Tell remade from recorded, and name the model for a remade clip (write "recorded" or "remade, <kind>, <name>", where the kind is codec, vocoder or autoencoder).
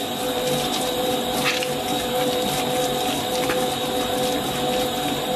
recorded